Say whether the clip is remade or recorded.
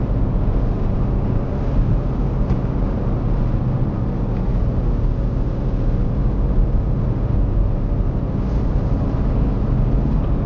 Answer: recorded